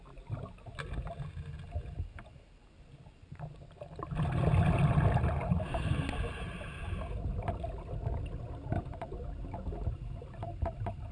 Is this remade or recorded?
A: recorded